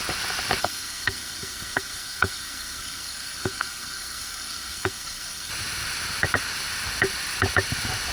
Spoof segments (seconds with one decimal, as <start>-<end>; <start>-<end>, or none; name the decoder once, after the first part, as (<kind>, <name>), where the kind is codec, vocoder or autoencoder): 0.6-5.5 (codec, SNAC)

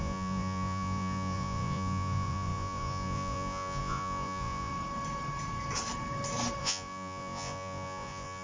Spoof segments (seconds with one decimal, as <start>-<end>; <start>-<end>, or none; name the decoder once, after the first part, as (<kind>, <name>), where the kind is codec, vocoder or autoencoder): 0.0-4.7 (vocoder, Vocos); 6.6-8.4